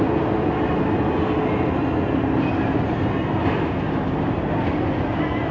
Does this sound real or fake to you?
real